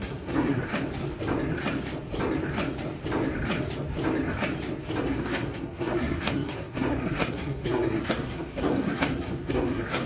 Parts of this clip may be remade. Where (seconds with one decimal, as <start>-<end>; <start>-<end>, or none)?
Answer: 0.0-0.6; 5.0-10.1